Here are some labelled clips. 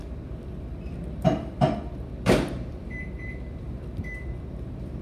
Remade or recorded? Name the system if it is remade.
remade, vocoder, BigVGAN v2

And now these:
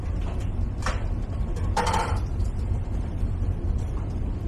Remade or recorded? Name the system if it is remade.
remade, vocoder, BigVGAN v2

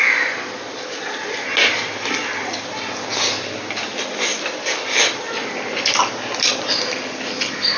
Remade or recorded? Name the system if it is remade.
recorded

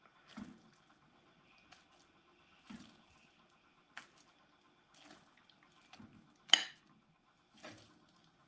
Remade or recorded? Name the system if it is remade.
recorded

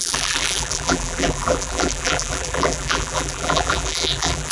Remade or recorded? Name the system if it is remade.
remade, vocoder, BigVGAN v2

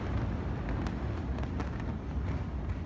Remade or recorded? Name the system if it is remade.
recorded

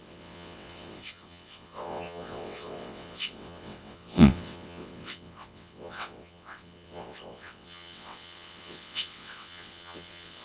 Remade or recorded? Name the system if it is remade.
remade, vocoder, WaveNeXt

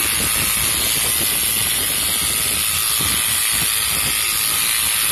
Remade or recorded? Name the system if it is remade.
recorded